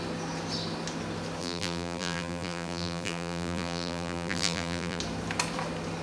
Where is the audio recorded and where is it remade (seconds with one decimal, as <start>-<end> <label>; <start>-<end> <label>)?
0.0-1.4 recorded; 1.4-5.0 remade; 5.0-6.0 recorded